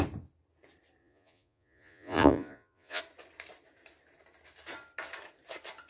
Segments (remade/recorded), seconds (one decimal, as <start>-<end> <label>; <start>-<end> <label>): 0.0-1.0 recorded; 1.0-3.0 remade; 3.0-5.9 recorded